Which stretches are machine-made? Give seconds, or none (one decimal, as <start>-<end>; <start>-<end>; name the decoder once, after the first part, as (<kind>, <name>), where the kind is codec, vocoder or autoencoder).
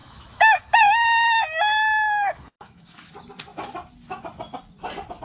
0.0-3.1 (autoencoder, DAC-VAE)